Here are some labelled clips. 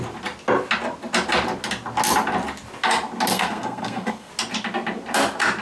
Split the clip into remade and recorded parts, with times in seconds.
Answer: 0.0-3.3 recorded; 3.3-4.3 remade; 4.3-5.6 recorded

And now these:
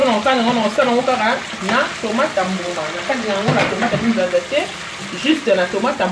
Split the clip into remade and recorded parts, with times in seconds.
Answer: 0.0-6.1 recorded

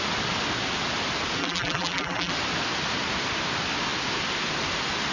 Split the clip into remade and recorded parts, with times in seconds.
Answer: 0.0-1.4 recorded; 1.4-2.3 remade; 2.3-5.1 recorded

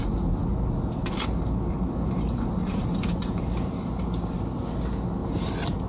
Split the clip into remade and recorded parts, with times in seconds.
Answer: 0.0-2.6 recorded; 2.6-3.5 remade; 3.5-5.2 recorded; 5.2-5.9 remade

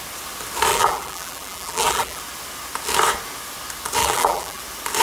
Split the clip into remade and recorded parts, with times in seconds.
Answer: 0.0-0.7 recorded; 0.7-2.2 remade; 2.2-4.0 recorded; 4.0-4.6 remade; 4.6-5.0 recorded

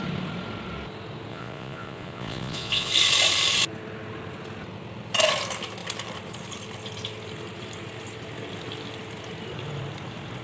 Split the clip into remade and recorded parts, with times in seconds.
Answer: 0.0-1.3 recorded; 1.3-2.9 remade; 2.9-10.4 recorded

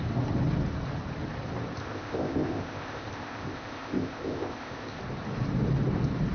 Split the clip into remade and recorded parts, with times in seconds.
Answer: 0.0-1.8 recorded; 1.8-5.0 remade; 5.0-6.3 recorded

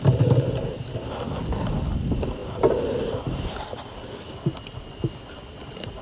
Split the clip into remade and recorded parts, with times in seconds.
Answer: 0.0-6.0 recorded